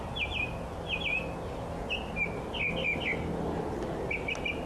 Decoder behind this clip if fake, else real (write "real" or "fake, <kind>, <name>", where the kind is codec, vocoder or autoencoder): real